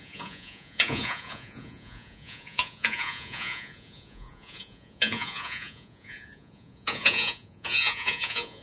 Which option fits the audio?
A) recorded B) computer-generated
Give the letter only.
B